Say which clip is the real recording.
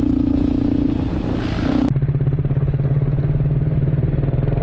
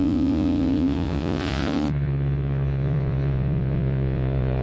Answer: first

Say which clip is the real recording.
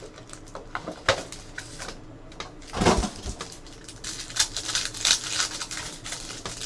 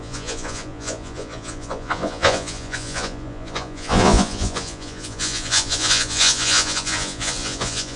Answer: first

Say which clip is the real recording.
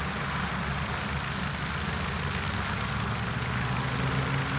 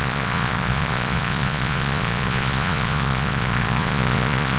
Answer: first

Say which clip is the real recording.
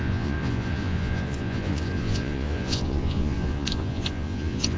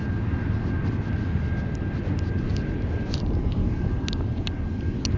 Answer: second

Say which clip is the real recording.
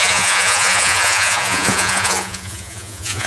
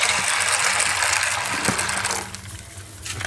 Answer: second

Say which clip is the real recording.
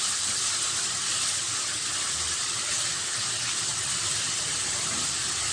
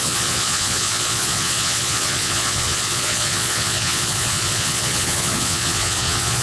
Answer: first